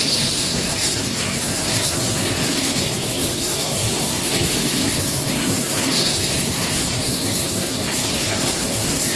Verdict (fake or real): fake